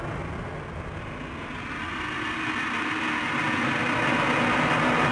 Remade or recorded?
recorded